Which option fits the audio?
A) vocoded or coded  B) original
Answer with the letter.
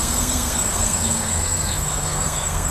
A